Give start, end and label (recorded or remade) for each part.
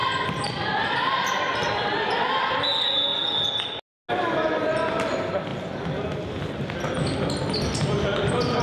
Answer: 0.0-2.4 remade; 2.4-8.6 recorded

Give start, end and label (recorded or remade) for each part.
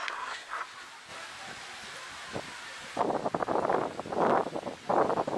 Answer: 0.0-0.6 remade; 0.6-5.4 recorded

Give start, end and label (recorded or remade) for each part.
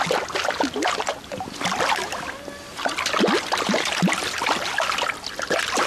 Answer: 0.0-5.9 recorded